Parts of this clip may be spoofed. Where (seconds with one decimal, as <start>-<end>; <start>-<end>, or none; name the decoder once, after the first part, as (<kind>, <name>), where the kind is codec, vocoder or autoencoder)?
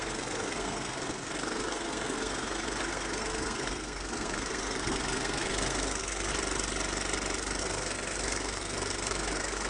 0.0-6.3 (codec, SNAC); 7.6-9.7